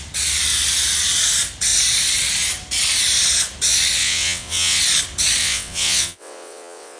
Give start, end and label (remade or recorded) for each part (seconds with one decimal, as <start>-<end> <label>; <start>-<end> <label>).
0.0-4.0 recorded; 4.0-4.8 remade; 4.8-5.4 recorded; 5.4-7.0 remade